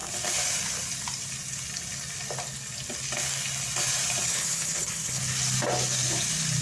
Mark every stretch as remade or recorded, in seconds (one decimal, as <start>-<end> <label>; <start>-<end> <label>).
0.0-4.3 recorded; 4.3-5.2 remade; 5.2-6.6 recorded